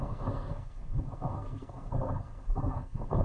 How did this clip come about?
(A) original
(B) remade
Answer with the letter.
B